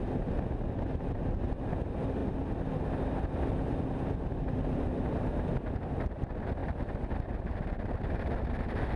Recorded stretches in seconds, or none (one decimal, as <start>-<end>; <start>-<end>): 0.0-9.0